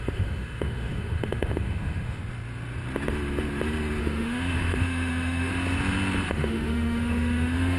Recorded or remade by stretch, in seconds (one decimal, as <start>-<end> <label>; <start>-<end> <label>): 0.0-2.2 remade; 2.2-4.0 recorded; 4.0-5.5 remade; 5.5-6.3 recorded; 6.3-7.8 remade